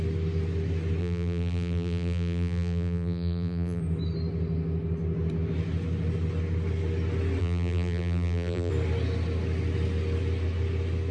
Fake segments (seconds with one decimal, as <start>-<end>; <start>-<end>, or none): 1.0-3.8; 7.4-8.7